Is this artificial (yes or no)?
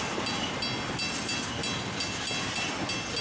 no